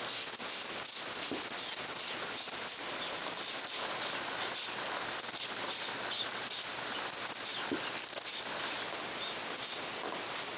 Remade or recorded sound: recorded